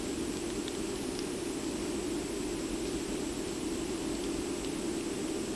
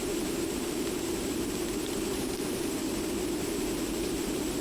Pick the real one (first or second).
first